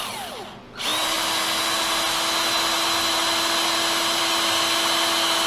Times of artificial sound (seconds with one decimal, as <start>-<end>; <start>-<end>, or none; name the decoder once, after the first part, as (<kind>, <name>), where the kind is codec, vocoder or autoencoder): none